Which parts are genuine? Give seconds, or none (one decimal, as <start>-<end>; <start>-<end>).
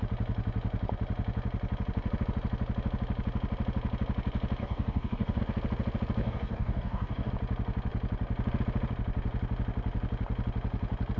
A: 0.0-4.6; 5.4-6.2; 7.3-11.2